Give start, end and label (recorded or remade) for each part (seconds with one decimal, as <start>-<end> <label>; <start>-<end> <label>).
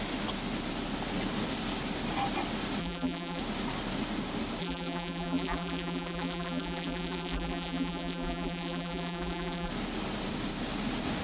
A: 0.0-2.8 recorded; 2.8-3.4 remade; 3.4-4.6 recorded; 4.6-9.7 remade; 9.7-11.2 recorded